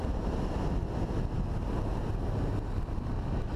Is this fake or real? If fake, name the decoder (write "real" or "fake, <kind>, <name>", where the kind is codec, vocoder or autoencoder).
real